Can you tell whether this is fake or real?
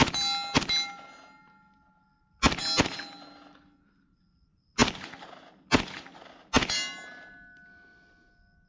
real